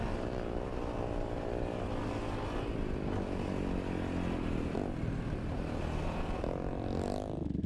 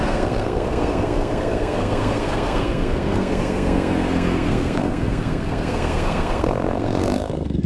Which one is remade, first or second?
second